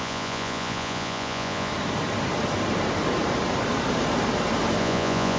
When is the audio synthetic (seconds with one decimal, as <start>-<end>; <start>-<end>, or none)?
0.0-1.7; 4.8-5.4